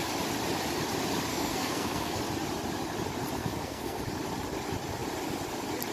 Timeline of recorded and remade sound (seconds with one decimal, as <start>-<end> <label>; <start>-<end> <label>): 0.0-1.3 recorded; 1.3-2.2 remade; 2.2-3.4 recorded; 3.4-4.0 remade; 4.0-5.9 recorded